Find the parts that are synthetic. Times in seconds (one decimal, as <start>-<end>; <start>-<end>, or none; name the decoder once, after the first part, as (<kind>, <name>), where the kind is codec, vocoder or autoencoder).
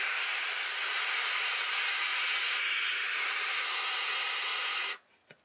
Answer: none